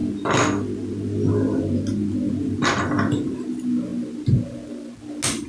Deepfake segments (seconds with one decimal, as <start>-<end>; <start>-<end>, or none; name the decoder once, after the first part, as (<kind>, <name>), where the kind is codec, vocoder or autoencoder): none